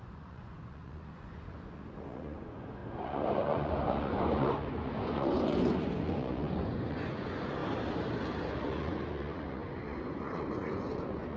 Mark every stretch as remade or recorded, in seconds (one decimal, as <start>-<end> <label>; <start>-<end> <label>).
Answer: 0.0-7.6 remade; 7.6-8.5 recorded; 8.5-11.4 remade